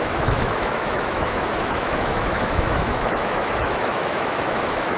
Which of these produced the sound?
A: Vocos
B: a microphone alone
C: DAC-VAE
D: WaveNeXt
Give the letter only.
C